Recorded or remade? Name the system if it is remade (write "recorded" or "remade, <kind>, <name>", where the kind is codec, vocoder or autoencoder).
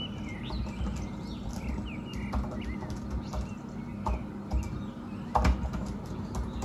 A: recorded